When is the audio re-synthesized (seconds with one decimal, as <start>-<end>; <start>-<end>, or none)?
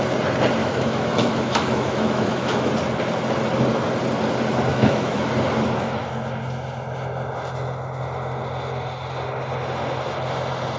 0.6-2.7; 4.7-5.3